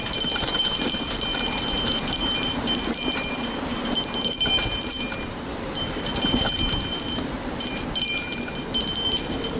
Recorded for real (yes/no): no